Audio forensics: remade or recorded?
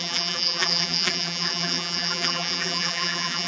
remade